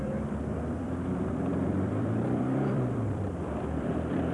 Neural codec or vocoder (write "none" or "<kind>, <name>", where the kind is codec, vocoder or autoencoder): vocoder, BigVGAN v2